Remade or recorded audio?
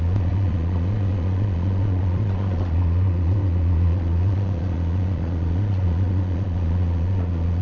remade